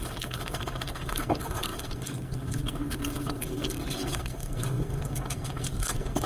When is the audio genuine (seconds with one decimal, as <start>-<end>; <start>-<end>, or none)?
none